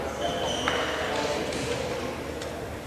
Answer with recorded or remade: recorded